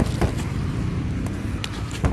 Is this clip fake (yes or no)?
no